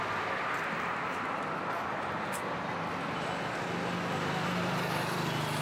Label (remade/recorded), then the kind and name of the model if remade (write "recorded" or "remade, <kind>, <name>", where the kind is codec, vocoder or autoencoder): recorded